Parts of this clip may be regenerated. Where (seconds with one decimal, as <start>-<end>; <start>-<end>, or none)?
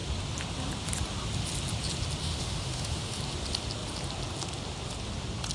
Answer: 2.2-3.2